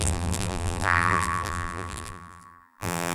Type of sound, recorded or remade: remade